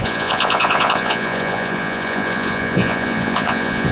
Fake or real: fake